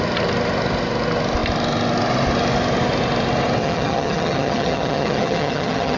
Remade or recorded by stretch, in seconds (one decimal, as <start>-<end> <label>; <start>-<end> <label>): 0.0-3.6 recorded; 3.6-6.0 remade